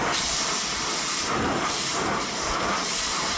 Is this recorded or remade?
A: remade